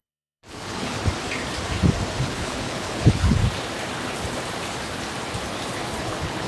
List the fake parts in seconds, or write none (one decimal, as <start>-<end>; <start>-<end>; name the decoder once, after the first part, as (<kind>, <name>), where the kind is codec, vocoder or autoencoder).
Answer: 0.0-1.0 (codec, HILCodec); 2.2-3.4; 6.0-6.5